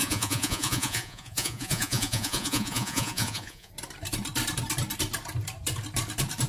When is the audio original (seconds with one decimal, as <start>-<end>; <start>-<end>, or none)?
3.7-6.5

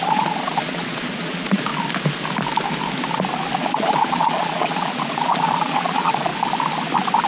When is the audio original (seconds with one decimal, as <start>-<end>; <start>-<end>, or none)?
1.7-3.6; 6.3-7.3

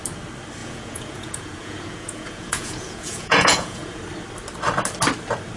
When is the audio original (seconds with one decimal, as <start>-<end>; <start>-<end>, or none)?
0.0-0.6; 4.0-5.6